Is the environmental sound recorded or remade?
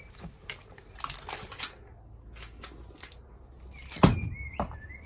recorded